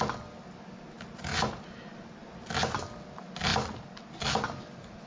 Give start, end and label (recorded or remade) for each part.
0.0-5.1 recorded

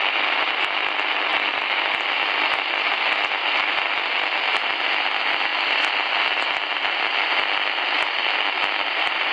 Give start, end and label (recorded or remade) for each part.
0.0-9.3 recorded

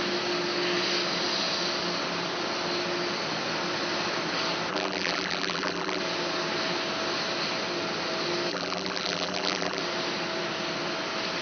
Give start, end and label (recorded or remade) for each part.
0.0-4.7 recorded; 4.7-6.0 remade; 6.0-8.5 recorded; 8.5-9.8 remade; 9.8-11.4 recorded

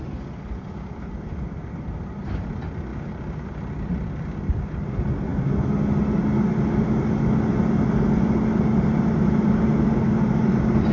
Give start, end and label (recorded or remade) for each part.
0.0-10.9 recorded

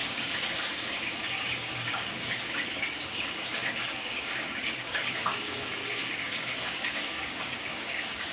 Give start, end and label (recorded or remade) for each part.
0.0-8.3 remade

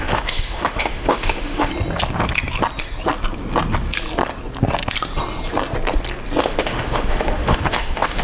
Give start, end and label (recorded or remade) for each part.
0.0-1.7 remade; 1.7-6.4 recorded; 6.4-8.2 remade

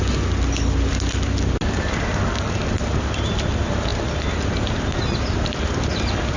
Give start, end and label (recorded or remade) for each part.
0.0-6.4 recorded